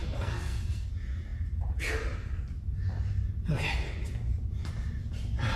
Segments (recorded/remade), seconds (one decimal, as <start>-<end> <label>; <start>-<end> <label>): 0.0-0.9 remade; 0.9-5.6 recorded